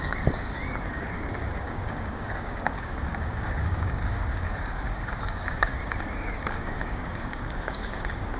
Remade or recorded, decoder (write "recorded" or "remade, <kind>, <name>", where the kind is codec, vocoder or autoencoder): remade, codec, DAC